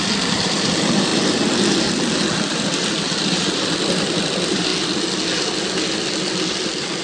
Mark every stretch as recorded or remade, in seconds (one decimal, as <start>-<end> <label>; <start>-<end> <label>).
0.0-1.1 remade; 1.1-2.1 recorded; 2.1-4.7 remade; 4.7-7.0 recorded

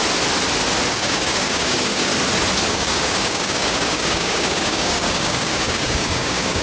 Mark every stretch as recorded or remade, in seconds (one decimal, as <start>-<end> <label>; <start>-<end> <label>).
0.0-0.9 recorded; 0.9-2.1 remade; 2.1-2.7 recorded; 2.7-6.6 remade

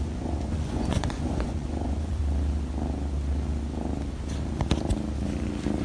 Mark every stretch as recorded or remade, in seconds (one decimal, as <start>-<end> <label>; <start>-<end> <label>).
0.0-2.2 remade; 2.2-5.8 recorded

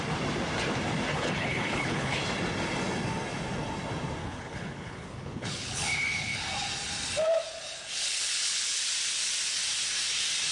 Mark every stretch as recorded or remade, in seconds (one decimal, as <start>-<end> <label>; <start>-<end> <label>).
0.0-1.1 recorded; 1.1-2.2 remade; 2.2-4.2 recorded; 4.2-6.5 remade; 6.5-7.5 recorded; 7.5-8.8 remade; 8.8-10.5 recorded